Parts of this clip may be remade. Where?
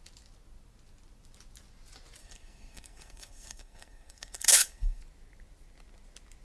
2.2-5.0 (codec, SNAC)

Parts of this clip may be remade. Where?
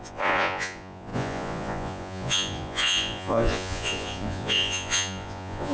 0.0-5.7 (vocoder, Vocos)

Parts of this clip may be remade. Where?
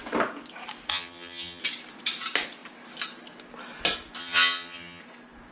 0.9-1.6 (vocoder, HiFi-GAN); 4.2-5.0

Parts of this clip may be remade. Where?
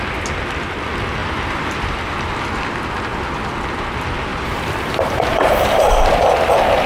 1.2-2.3 (vocoder, BigVGAN v2); 4.3-6.3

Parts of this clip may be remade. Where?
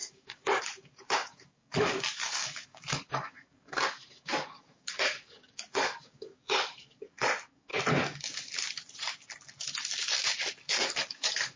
0.0-7.7 (codec, DAC); 10.7-11.6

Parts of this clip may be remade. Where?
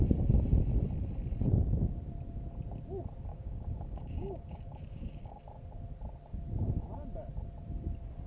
3.3-5.4 (codec, DAC)